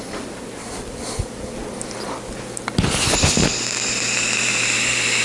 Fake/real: real